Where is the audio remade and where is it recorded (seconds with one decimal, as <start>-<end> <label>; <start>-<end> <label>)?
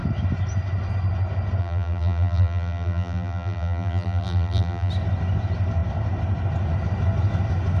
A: 0.0-1.6 recorded; 1.6-4.9 remade; 4.9-7.8 recorded